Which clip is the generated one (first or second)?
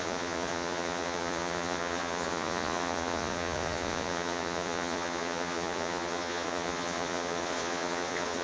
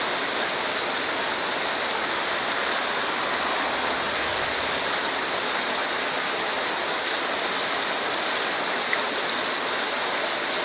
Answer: first